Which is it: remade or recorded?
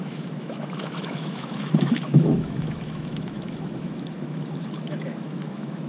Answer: remade